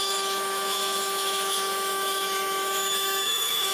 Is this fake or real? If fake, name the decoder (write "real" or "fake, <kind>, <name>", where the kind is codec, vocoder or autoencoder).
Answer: fake, autoencoder, DAC-VAE